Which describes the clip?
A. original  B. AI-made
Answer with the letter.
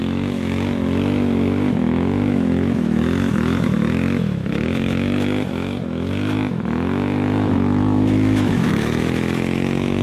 B